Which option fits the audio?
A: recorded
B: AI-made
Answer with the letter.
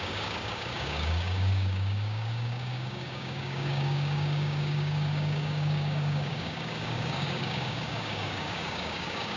B